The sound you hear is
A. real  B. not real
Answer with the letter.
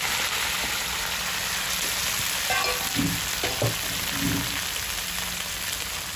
A